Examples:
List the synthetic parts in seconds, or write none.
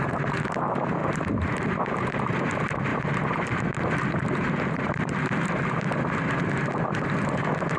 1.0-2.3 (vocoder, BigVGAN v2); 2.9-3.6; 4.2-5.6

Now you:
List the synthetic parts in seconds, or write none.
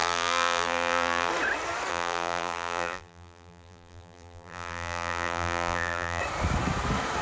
0.0-1.3 (vocoder, BigVGAN v2); 1.9-6.2